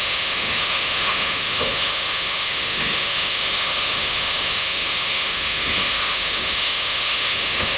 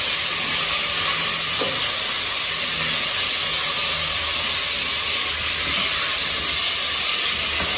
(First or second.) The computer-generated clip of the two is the first